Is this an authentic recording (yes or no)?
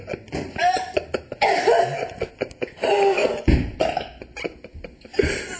yes